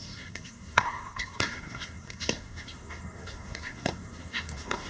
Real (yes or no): no